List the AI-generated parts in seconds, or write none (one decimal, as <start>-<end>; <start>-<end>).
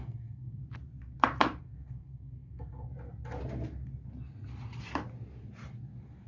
0.0-0.6; 1.6-2.9